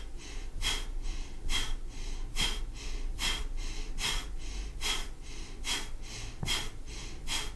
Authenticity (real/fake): real